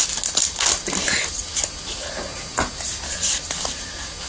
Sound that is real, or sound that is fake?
real